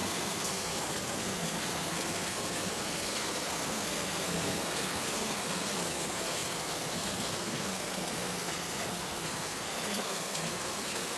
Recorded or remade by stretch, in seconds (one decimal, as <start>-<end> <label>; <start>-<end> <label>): 0.0-11.2 remade